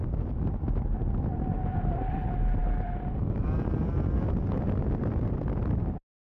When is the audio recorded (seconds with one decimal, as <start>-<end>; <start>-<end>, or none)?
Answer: 0.0-6.3